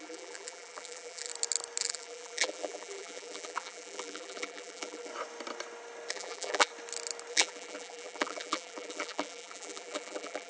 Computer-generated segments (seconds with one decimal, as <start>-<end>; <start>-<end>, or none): 0.0-1.3; 1.8-5.1; 6.1-6.7; 7.3-10.5